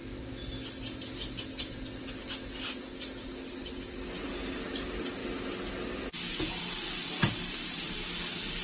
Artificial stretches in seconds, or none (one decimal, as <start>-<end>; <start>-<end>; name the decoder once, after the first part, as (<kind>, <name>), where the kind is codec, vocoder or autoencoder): none